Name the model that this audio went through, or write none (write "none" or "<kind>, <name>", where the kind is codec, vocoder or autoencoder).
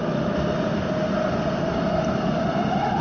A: none